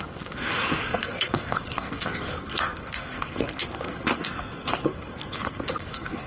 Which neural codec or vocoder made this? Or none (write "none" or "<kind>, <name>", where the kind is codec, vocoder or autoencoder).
codec, SNAC